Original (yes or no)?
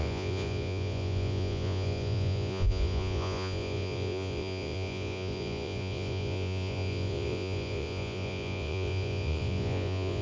no